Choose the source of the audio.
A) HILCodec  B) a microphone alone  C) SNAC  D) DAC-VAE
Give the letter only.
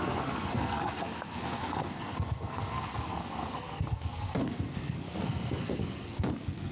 C